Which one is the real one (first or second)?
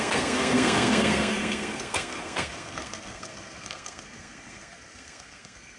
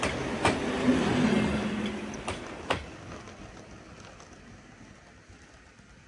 second